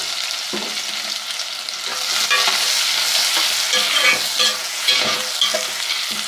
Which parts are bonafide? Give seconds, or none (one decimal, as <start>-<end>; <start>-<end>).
0.0-4.6; 5.2-6.3